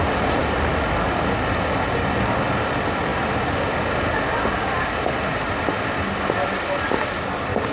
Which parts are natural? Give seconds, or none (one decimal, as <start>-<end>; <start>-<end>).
0.0-7.7